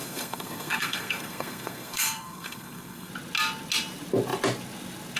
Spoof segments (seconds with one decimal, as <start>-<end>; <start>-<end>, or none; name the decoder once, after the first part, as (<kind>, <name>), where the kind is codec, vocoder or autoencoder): 0.0-3.1 (codec, SNAC)